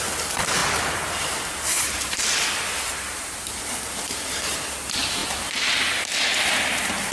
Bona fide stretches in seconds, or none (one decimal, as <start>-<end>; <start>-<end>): 0.0-0.6; 3.8-7.1